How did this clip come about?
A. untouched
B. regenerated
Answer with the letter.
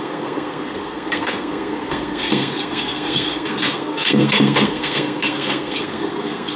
B